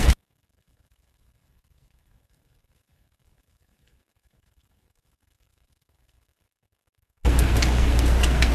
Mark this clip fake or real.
fake